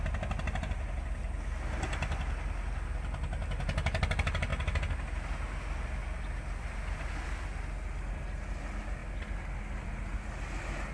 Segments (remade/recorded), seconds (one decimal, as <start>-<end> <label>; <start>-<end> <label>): 0.0-10.9 recorded